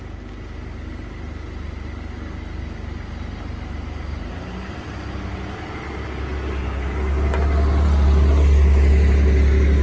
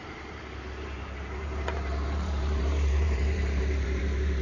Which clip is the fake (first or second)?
second